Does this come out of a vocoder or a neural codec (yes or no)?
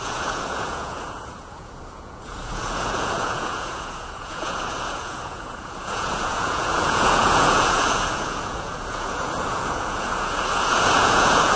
yes